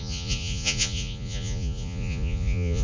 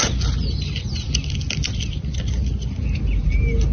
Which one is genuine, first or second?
second